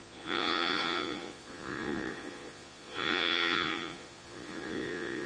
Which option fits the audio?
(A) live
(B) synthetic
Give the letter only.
B